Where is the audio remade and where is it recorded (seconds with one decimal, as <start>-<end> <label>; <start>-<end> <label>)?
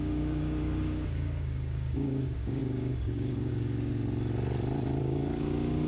0.0-3.9 remade; 3.9-5.0 recorded; 5.0-5.9 remade